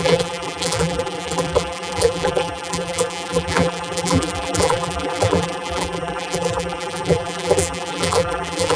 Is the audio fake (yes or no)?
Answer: yes